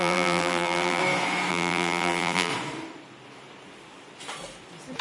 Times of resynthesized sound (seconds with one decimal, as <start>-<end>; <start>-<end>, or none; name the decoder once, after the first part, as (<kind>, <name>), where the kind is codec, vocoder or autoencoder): 0.0-1.0 (vocoder, BigVGAN v2); 1.5-2.5